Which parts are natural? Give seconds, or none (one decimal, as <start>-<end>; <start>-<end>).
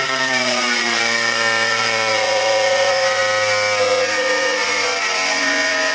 3.2-3.8